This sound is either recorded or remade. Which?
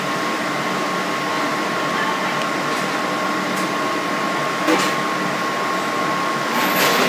recorded